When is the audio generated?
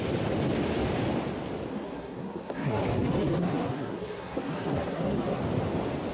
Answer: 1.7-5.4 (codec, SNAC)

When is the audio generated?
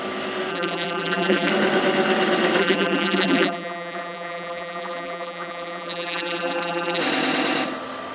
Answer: 0.5-1.5 (vocoder, BigVGAN v2); 2.6-7.0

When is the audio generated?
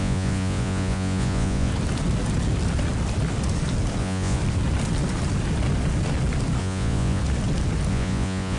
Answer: 0.0-1.7 (vocoder, Vocos); 4.0-4.4; 6.6-7.2; 7.9-8.6